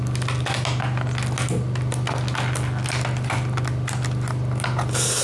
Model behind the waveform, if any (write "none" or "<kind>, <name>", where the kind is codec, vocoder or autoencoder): none